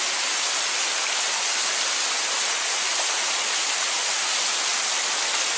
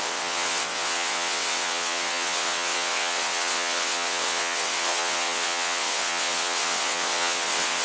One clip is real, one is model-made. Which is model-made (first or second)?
second